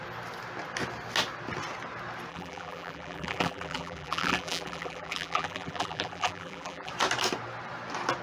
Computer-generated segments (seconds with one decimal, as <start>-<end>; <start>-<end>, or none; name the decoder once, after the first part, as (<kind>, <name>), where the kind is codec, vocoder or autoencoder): 2.3-6.9 (vocoder, BigVGAN v2)